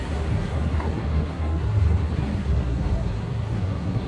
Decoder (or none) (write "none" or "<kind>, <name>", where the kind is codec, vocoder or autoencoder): codec, SNAC